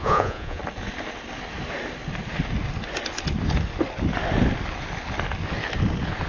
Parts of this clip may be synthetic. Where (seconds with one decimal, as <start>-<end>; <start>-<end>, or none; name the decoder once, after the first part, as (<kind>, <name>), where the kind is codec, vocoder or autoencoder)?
0.0-0.6 (vocoder, Vocos)